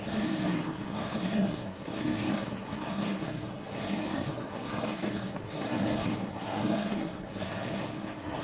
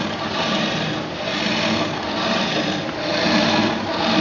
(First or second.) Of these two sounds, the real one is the second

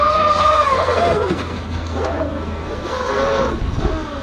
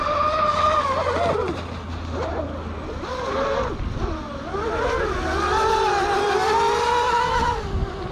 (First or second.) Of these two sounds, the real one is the second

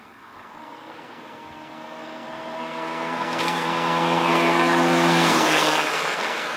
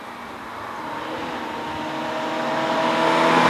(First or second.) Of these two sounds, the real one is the second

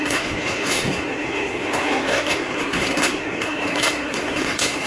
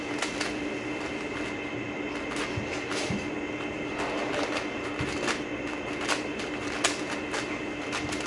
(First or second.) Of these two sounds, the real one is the second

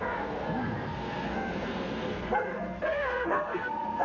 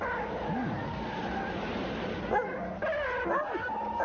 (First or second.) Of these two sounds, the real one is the second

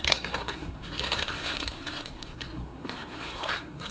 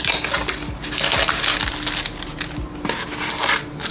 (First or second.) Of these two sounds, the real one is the second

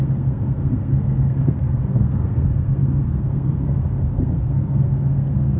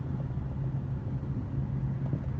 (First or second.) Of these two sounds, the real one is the second